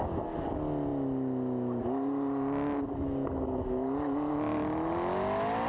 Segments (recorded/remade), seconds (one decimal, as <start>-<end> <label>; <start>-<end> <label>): 0.0-5.7 recorded